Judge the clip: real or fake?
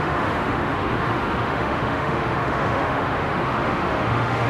fake